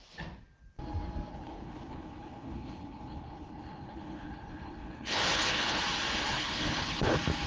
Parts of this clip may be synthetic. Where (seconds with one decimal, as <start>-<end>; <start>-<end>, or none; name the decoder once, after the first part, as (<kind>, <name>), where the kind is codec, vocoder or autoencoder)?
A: 1.3-5.8 (codec, HILCodec); 6.3-7.1